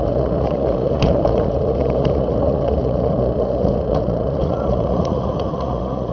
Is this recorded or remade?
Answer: remade